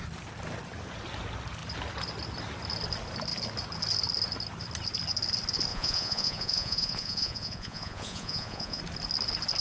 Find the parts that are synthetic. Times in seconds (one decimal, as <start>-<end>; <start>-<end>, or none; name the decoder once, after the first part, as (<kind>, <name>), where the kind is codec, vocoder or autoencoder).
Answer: 5.7-8.8 (vocoder, Vocos)